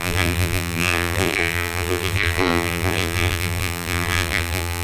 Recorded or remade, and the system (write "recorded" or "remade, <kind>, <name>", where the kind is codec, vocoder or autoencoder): remade, vocoder, BigVGAN v2